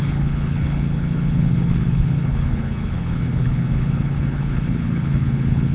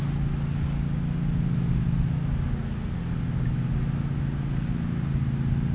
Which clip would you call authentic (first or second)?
second